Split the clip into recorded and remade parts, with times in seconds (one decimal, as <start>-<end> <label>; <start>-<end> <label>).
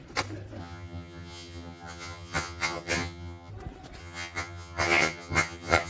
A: 0.0-0.6 recorded; 0.6-3.5 remade; 3.5-4.0 recorded; 4.0-5.9 remade